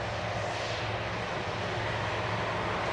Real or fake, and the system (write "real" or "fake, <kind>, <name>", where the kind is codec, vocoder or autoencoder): real